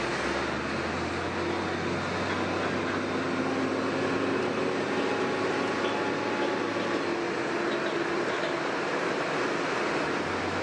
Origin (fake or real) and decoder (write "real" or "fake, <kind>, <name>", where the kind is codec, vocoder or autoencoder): real